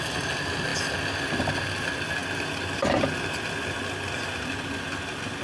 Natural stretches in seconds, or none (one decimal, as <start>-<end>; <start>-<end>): 0.0-5.4